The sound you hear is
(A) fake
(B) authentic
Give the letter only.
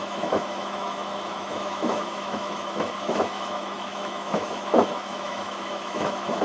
A